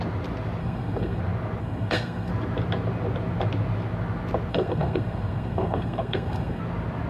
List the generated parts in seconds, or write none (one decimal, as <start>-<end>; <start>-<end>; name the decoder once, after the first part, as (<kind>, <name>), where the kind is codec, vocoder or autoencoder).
0.6-1.2 (codec, SNAC); 1.6-2.3; 4.5-6.6